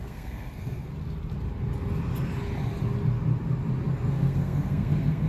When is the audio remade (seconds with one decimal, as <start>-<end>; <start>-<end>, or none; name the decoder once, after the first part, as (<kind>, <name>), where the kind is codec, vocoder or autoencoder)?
0.0-0.9 (codec, SNAC); 4.1-5.3